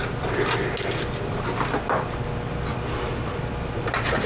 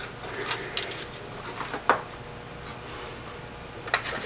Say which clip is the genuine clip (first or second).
second